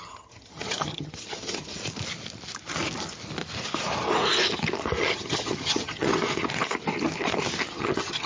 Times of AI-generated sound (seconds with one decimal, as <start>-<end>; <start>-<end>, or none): 0.0-1.8; 5.0-6.1; 7.7-8.3